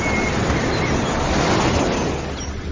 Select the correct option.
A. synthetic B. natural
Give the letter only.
B